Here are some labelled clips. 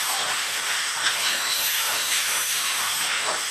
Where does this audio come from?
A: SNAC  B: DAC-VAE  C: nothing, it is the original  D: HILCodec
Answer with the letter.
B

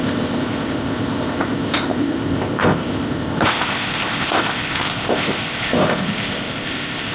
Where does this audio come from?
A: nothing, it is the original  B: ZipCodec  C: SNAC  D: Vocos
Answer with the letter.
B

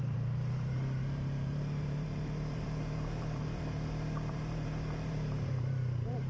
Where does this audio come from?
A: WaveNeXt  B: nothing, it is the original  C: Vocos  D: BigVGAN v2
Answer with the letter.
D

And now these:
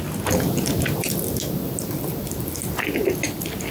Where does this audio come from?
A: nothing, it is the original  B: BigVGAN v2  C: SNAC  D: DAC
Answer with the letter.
A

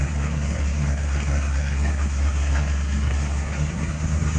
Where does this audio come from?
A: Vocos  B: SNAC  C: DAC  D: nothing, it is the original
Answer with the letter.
B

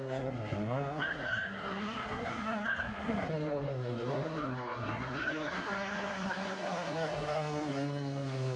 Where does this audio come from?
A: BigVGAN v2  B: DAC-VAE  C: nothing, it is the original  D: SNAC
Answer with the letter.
D